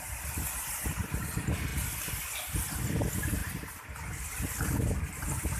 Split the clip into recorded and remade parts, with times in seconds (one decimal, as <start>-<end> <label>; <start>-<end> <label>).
0.0-5.6 recorded